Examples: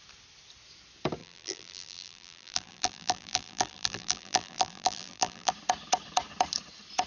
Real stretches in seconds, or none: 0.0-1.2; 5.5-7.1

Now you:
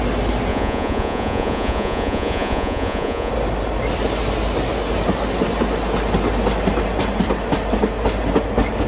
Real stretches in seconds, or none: 0.0-0.5; 3.3-8.9

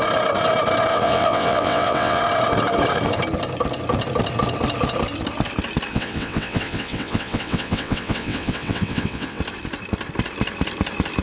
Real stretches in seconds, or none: 0.0-0.9; 2.2-5.9; 9.4-11.2

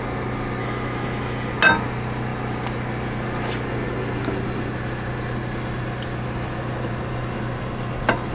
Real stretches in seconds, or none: 0.0-0.6; 1.5-8.3

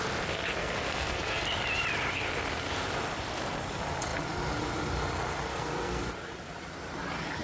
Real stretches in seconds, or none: 0.0-0.6; 1.4-5.5; 6.0-7.4